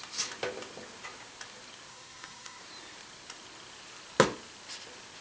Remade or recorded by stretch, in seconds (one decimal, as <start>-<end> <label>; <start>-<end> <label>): 0.0-1.9 recorded; 1.9-2.6 remade; 2.6-5.2 recorded